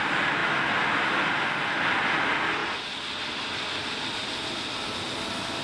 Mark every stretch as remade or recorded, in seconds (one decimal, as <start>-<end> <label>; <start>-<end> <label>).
0.0-5.6 recorded